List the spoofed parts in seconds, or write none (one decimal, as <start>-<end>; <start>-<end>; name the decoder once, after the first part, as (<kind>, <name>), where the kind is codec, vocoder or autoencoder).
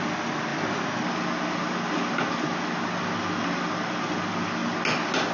none